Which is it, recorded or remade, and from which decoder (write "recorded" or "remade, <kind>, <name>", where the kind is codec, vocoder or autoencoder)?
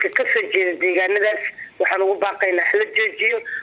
remade, vocoder, Vocos